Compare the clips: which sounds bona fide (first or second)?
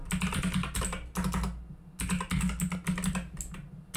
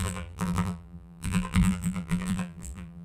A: first